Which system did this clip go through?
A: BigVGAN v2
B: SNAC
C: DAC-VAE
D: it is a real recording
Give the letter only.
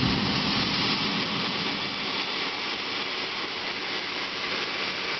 A